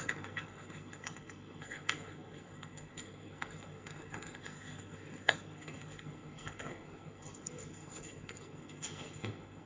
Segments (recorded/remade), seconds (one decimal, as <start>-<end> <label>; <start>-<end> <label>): 0.0-9.7 remade